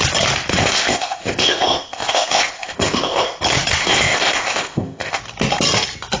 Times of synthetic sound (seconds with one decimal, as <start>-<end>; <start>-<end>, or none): 0.5-3.4; 3.8-5.2